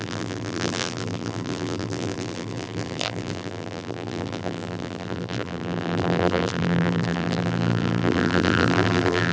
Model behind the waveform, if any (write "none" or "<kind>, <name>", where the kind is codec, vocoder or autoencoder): vocoder, BigVGAN v2